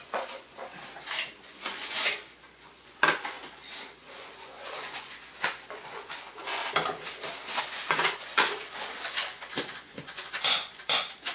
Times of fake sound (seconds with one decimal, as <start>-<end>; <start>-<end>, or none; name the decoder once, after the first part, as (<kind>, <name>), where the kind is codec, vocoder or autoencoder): 0.0-0.6 (vocoder, Vocos); 1.4-6.6; 7.6-11.3